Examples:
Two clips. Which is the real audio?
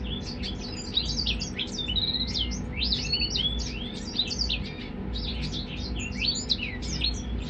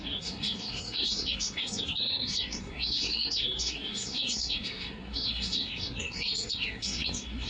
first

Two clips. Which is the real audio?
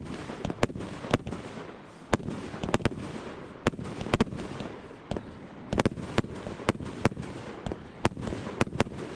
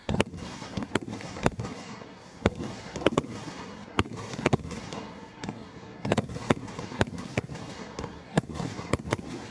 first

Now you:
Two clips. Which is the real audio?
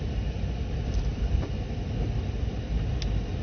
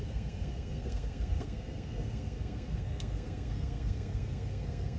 first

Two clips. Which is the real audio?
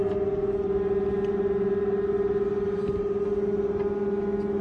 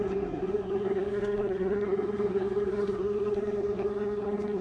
first